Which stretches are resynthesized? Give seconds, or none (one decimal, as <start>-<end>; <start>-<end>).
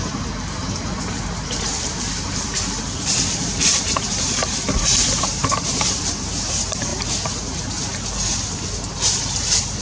0.0-4.4; 5.2-6.9; 8.7-9.8